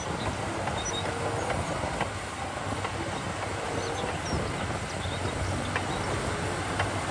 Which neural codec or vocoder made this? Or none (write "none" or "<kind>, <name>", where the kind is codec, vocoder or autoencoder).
none